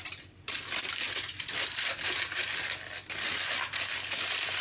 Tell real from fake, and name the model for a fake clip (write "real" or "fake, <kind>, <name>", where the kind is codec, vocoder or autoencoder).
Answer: real